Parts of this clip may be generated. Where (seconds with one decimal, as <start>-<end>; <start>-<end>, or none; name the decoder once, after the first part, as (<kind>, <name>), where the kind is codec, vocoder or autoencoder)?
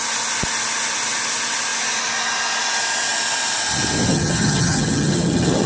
4.1-5.7 (vocoder, HiFi-GAN)